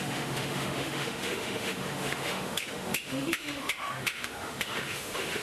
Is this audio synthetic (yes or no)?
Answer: yes